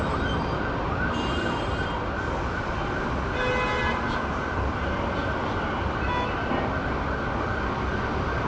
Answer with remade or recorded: recorded